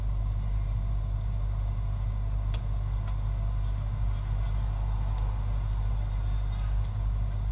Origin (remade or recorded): recorded